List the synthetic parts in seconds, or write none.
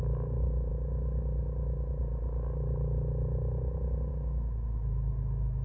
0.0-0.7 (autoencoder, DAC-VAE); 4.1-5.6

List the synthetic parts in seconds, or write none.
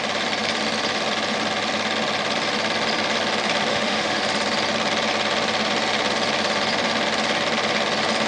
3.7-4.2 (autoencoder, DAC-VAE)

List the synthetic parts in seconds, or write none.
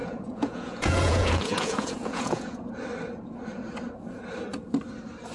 0.0-2.7 (vocoder, Vocos)